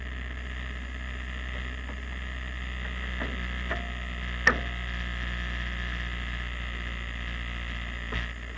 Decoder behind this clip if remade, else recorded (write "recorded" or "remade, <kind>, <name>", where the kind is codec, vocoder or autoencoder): recorded